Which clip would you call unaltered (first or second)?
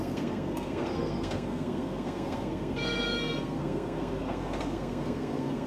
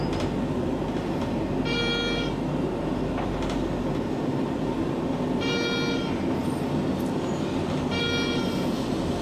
second